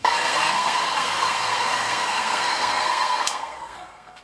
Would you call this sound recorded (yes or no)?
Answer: no